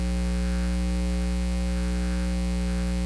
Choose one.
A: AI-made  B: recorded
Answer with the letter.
B